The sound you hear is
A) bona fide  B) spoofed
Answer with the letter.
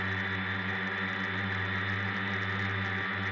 A